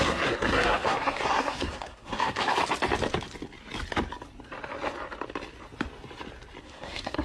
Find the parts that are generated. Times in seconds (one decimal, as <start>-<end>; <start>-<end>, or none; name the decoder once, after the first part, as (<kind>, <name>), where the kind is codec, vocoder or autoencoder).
0.0-2.6 (codec, SNAC); 6.6-7.2